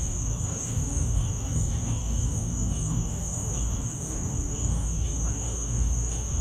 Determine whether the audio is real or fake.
fake